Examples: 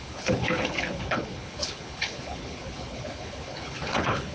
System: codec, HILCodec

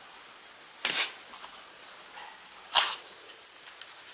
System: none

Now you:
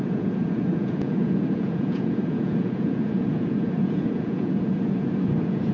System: vocoder, Vocos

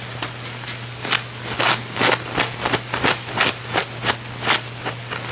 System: none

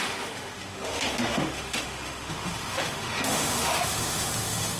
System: autoencoder, DAC-VAE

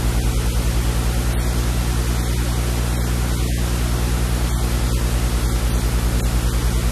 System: none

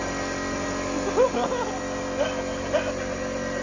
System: none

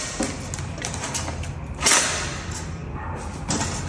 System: none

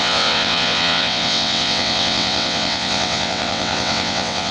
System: vocoder, WaveNeXt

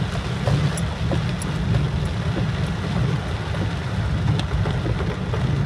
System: none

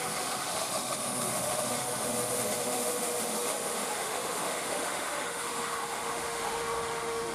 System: autoencoder, DAC-VAE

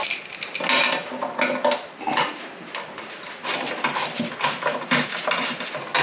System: none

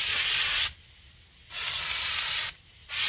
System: none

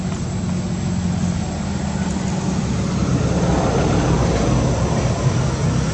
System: none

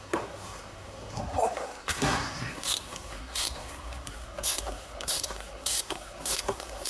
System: codec, SNAC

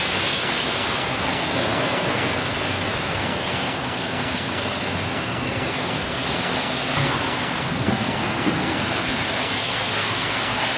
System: codec, SNAC